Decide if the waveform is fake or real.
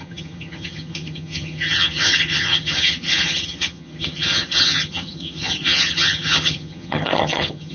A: fake